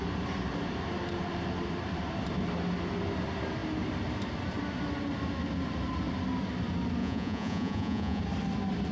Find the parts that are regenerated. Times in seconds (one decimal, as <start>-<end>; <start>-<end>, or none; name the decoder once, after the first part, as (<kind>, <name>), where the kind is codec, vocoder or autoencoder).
7.0-8.2 (vocoder, Vocos)